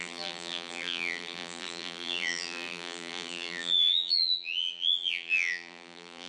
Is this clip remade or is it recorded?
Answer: remade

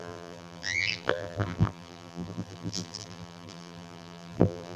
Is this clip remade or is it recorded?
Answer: remade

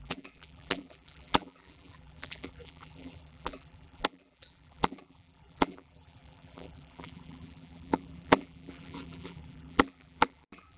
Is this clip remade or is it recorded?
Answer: remade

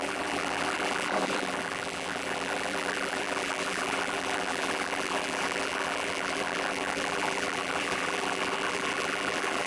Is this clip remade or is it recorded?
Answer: remade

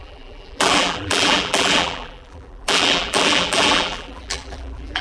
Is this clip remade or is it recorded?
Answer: remade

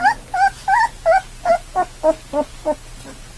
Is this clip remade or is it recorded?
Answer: recorded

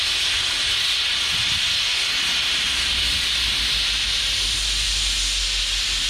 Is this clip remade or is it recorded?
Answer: recorded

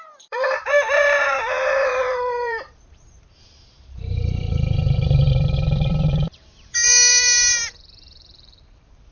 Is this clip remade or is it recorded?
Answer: remade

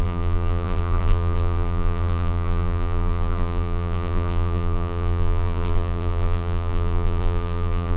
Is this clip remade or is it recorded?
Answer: remade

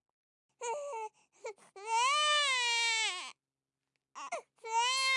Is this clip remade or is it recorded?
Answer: recorded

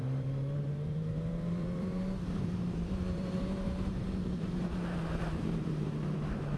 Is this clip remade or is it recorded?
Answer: remade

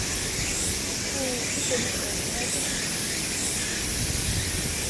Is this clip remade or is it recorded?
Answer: recorded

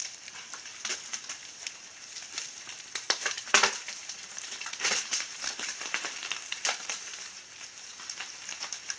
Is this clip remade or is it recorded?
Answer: remade